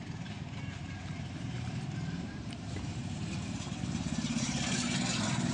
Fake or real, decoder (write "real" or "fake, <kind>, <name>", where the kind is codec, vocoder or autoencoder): fake, vocoder, BigVGAN v2